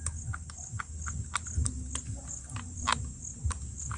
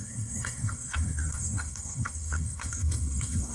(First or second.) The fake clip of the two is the second